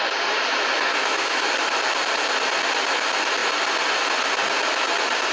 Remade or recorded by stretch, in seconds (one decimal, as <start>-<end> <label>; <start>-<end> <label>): 0.0-0.9 recorded; 0.9-1.5 remade; 1.5-5.3 recorded